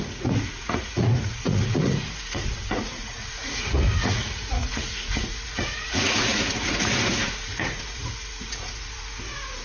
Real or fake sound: fake